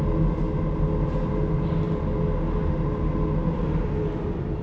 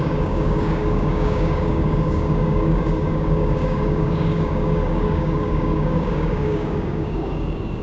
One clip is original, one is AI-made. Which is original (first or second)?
first